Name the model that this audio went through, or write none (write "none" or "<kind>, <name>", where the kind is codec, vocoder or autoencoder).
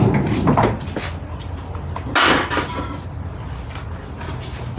none